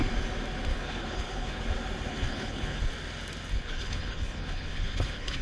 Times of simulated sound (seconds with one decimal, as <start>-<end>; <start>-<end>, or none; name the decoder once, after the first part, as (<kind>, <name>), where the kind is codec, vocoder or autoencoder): 0.7-1.6 (codec, HILCodec); 2.1-2.8; 3.5-5.4